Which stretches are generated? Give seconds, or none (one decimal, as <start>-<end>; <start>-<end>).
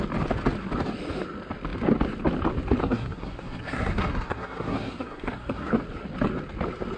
2.8-5.7